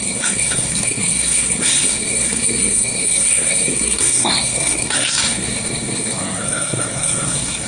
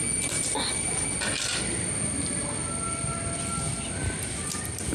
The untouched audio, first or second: second